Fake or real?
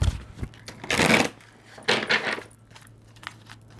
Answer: real